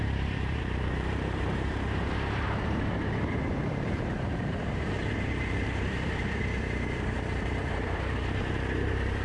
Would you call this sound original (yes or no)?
no